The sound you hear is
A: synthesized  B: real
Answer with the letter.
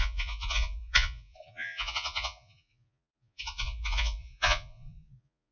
A